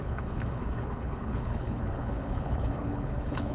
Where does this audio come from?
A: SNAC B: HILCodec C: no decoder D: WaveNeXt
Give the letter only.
B